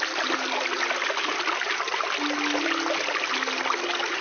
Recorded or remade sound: recorded